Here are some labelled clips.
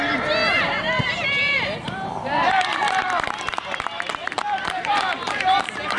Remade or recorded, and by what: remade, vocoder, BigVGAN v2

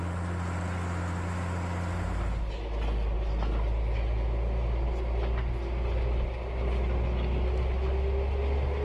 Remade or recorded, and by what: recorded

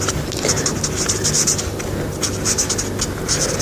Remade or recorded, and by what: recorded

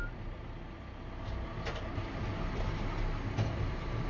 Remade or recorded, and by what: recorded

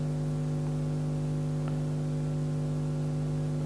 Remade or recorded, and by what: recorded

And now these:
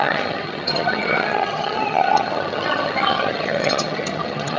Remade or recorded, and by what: remade, vocoder, HiFi-GAN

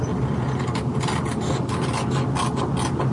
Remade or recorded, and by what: recorded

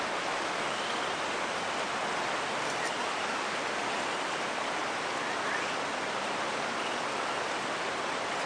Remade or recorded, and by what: recorded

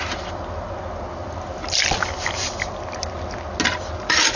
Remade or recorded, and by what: recorded